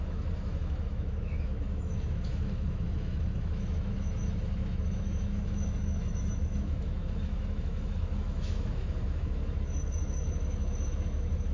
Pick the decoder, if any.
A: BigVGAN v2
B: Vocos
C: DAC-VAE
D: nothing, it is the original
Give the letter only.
C